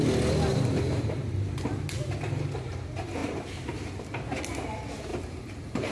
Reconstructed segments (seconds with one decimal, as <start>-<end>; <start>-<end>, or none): 0.5-2.1; 3.2-4.4; 5.1-5.9